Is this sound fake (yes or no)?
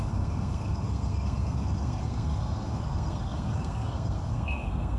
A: yes